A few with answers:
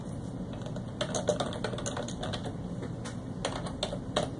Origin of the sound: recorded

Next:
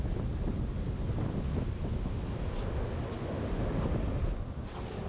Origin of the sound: recorded